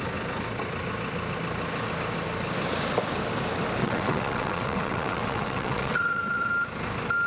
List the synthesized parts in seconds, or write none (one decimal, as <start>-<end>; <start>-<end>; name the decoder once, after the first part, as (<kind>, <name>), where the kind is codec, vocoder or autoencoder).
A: 3.8-6.5 (vocoder, WaveNeXt)